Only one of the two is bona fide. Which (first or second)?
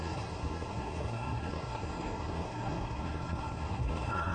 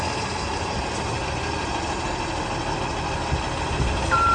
second